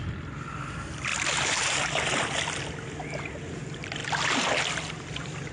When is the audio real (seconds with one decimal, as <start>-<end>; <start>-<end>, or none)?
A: 0.0-5.5